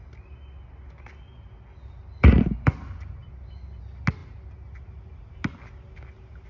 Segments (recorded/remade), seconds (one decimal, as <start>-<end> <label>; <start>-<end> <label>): 0.0-6.5 recorded